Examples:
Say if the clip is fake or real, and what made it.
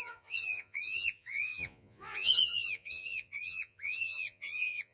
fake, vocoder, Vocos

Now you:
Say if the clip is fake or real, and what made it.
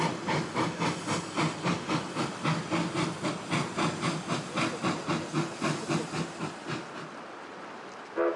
real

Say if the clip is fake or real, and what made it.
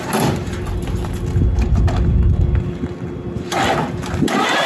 real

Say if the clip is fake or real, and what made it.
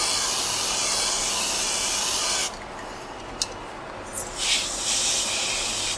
real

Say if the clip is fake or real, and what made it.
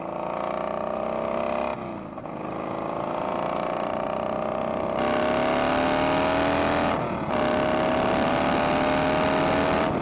real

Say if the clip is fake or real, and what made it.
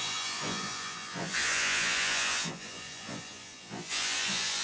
fake, vocoder, Vocos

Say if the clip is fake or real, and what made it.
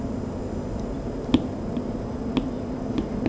real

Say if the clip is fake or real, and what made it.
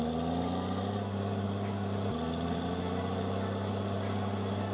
real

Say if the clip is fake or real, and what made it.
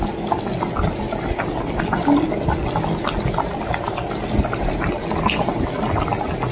real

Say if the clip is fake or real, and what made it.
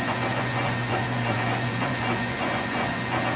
fake, vocoder, Vocos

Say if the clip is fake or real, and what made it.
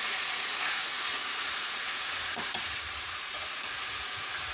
fake, vocoder, Vocos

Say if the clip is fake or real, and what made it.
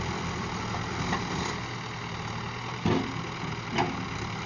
real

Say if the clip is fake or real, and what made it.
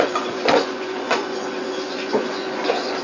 fake, vocoder, Vocos